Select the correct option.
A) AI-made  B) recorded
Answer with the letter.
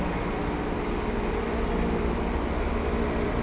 B